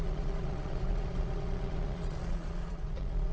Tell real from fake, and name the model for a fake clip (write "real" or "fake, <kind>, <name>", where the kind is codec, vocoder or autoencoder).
fake, vocoder, Vocos